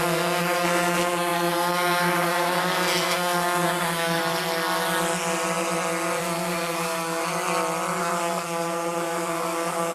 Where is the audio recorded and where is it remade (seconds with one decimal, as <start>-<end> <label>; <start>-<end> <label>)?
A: 0.0-4.2 remade; 4.2-6.2 recorded; 6.2-7.2 remade; 7.2-8.0 recorded; 8.0-9.9 remade